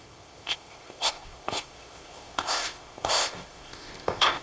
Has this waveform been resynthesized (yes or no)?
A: yes